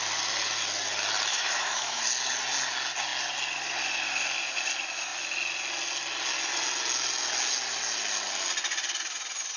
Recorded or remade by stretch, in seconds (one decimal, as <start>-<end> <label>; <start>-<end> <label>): 0.0-1.3 recorded; 1.3-2.0 remade; 2.0-9.6 recorded